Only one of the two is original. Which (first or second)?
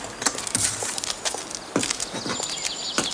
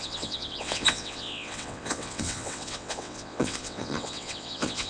first